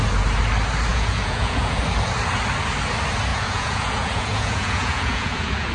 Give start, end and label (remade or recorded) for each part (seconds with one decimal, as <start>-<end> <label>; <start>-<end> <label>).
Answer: 0.0-0.9 recorded; 0.9-1.8 remade; 1.8-3.3 recorded; 3.3-5.7 remade